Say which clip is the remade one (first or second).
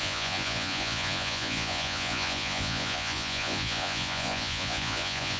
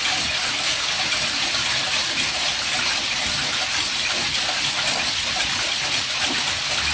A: first